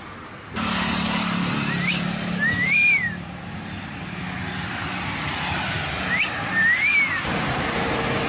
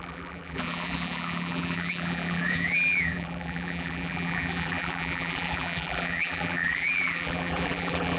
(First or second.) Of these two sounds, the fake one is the second